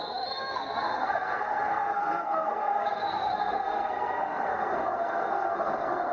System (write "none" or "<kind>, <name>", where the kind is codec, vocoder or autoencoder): codec, SNAC